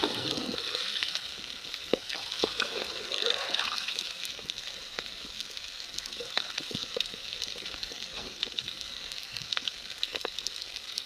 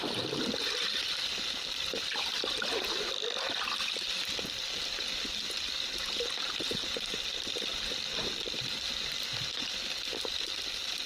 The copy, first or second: first